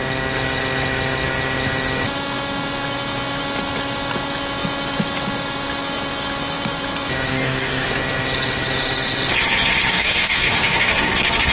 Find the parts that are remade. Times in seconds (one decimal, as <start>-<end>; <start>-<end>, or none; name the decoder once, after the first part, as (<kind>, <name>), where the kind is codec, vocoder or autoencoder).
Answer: 7.3-7.9 (codec, DAC); 9.9-11.1